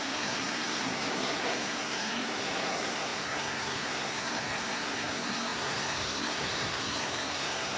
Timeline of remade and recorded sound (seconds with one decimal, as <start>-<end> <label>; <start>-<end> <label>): 0.0-7.8 remade